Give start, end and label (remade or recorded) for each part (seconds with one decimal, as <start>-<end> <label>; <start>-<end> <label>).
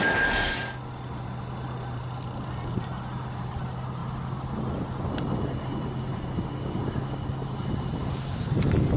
0.0-9.0 recorded